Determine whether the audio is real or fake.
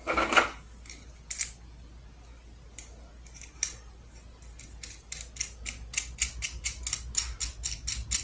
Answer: real